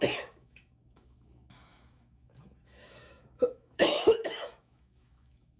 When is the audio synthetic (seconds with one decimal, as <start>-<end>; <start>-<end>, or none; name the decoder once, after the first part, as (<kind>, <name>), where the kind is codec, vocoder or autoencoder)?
0.0-5.6 (autoencoder, DAC-VAE)